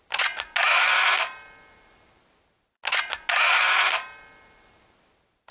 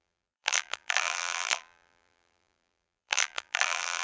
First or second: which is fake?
second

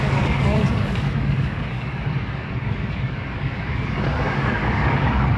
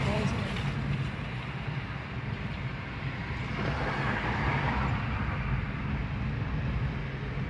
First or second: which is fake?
first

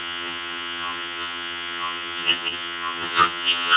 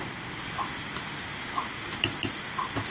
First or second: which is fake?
first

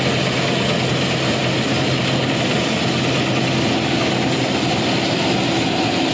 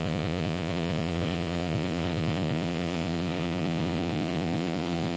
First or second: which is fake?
second